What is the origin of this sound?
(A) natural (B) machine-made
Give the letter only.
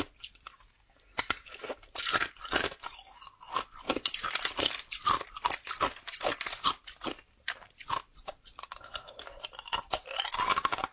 B